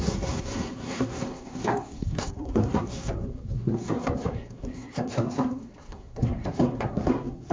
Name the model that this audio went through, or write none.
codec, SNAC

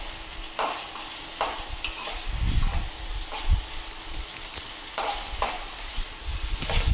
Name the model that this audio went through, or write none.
none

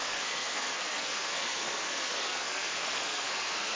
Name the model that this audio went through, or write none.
codec, SNAC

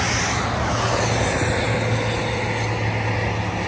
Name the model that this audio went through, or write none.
none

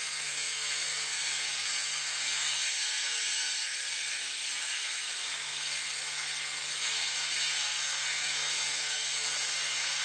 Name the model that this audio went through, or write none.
codec, SNAC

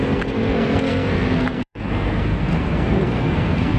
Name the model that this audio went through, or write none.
codec, SNAC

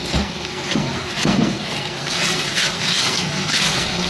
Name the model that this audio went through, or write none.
codec, SNAC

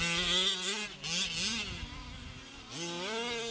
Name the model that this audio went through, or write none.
none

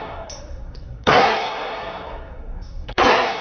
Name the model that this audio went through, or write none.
codec, SNAC